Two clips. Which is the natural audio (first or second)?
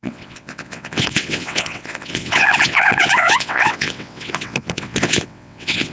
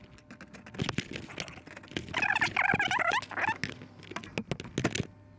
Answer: second